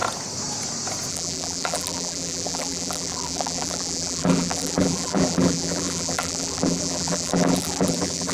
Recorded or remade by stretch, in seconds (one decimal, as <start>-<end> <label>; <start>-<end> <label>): 0.0-1.1 recorded; 1.1-8.3 remade